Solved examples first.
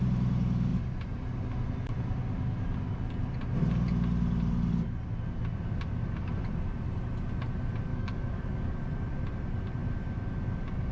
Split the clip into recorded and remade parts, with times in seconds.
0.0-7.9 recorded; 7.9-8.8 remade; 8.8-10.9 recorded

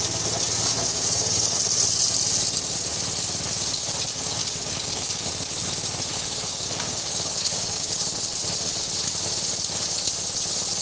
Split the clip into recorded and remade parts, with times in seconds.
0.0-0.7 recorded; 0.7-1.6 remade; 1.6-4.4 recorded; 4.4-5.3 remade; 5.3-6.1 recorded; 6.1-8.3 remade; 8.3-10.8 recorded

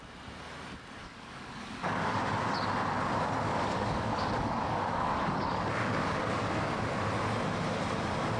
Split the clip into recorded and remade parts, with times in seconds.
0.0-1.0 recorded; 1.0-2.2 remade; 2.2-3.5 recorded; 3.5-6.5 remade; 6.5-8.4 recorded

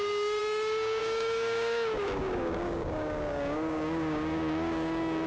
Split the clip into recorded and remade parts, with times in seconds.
0.0-5.3 remade

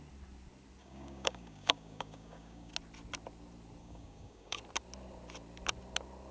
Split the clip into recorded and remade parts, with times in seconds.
0.0-0.8 recorded; 0.8-2.7 remade; 2.7-3.8 recorded; 3.8-4.6 remade; 4.6-6.3 recorded

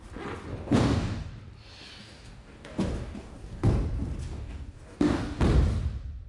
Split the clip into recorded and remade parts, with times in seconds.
0.0-0.5 recorded; 0.5-1.3 remade; 1.3-2.0 recorded; 2.0-3.7 remade; 3.7-4.2 recorded; 4.2-5.4 remade; 5.4-6.3 recorded

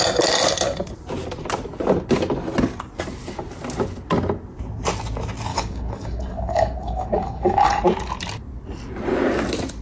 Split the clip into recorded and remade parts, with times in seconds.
0.0-5.5 recorded; 5.5-7.8 remade; 7.8-9.8 recorded